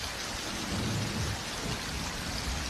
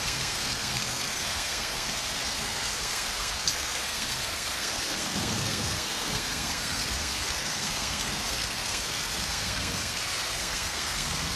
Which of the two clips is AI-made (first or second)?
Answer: second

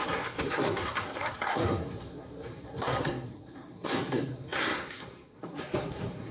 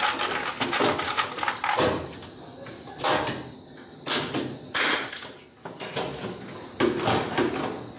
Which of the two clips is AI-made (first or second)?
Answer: first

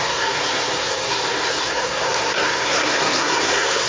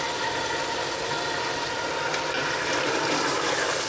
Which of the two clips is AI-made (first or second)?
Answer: first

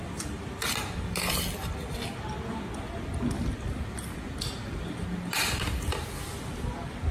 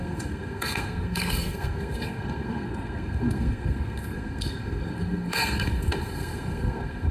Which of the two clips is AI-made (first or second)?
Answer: second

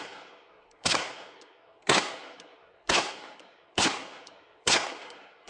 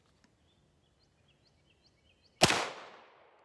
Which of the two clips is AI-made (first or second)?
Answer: first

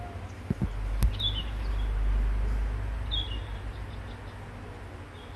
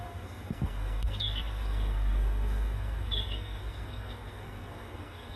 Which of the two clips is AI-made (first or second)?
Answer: second